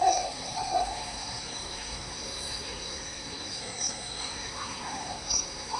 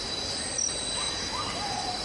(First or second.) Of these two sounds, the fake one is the first